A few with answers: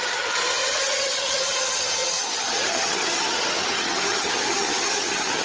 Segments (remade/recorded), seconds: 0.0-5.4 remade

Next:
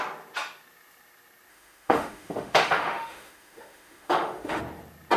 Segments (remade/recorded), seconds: 0.0-1.5 recorded; 1.5-4.6 remade; 4.6-5.2 recorded

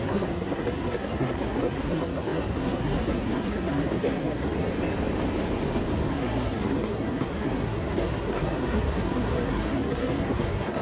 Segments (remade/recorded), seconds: 0.0-4.7 remade; 4.7-6.1 recorded; 6.1-10.8 remade

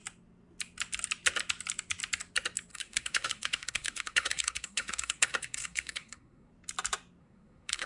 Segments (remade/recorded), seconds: 0.0-2.7 recorded; 2.7-6.5 remade; 6.5-7.2 recorded; 7.2-7.9 remade

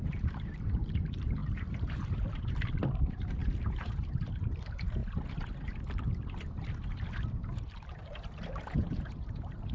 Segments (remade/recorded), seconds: 0.0-5.0 remade; 5.0-7.6 recorded; 7.6-9.7 remade

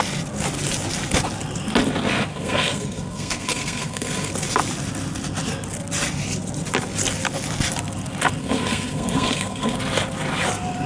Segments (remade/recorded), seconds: 0.0-2.3 recorded; 2.3-4.3 remade; 4.3-8.4 recorded; 8.4-9.8 remade; 9.8-10.9 recorded